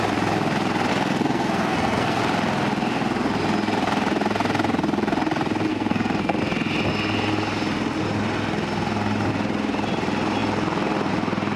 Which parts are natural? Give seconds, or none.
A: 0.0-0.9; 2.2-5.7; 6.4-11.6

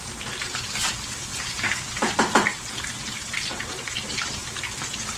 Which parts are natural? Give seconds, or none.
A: 0.0-1.3; 1.9-2.5; 4.6-5.2

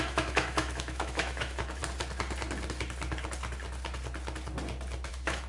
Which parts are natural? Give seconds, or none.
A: 1.8-5.1

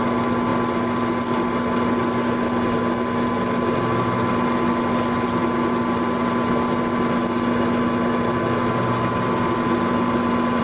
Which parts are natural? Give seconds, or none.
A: 0.0-10.6

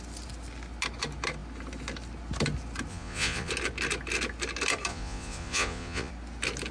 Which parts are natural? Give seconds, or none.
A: 0.0-2.9; 3.5-4.9; 6.1-6.7

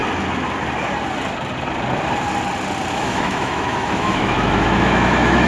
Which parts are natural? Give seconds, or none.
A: 0.0-2.9

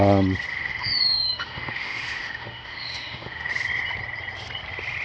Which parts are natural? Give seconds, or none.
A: 0.0-0.5; 3.5-5.0